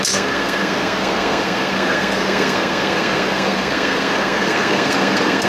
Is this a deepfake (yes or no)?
yes